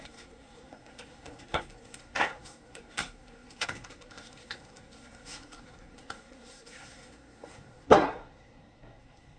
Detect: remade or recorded remade